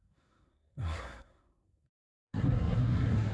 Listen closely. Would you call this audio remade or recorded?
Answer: remade